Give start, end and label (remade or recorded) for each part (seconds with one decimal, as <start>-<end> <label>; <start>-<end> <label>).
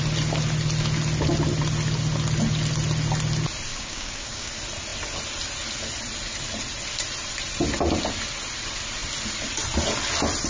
0.0-3.7 recorded; 3.7-4.5 remade; 4.5-10.5 recorded